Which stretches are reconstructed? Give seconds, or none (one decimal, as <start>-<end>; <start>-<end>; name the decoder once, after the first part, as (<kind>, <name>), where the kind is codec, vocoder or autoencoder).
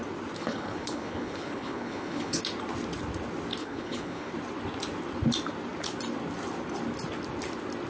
0.4-2.4 (codec, HILCodec); 3.6-4.3